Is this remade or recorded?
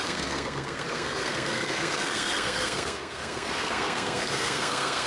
remade